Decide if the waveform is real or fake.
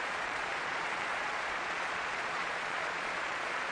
fake